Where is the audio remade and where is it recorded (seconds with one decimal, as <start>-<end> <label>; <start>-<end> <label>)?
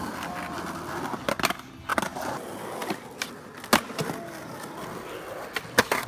0.0-6.1 recorded